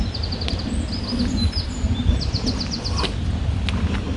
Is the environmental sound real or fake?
real